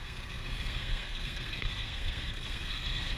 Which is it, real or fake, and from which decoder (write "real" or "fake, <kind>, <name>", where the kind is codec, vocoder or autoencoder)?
fake, codec, SNAC